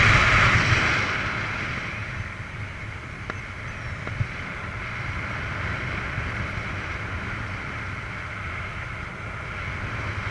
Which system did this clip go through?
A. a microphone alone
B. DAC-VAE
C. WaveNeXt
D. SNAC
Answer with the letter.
A